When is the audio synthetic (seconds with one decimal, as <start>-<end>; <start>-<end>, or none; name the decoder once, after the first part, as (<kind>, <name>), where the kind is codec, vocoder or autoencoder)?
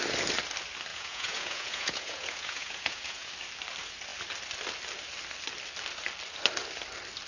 0.9-3.3 (vocoder, Vocos)